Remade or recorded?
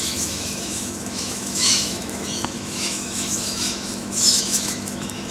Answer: remade